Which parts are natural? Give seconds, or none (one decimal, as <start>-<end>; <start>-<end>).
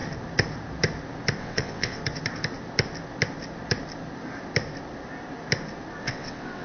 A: 0.0-1.4; 2.0-6.0